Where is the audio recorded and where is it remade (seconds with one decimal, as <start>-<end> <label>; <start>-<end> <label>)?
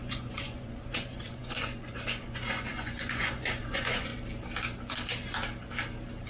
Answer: 0.0-4.1 remade; 4.1-6.3 recorded